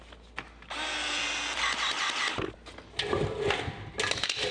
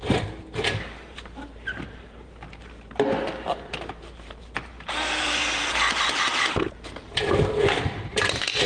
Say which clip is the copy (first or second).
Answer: second